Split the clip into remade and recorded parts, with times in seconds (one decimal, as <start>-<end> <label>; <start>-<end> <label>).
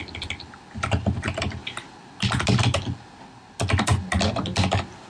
0.0-5.1 recorded